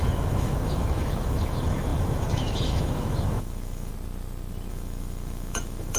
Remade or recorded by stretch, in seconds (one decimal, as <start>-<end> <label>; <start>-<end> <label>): 0.0-3.9 remade; 3.9-4.7 recorded; 4.7-6.0 remade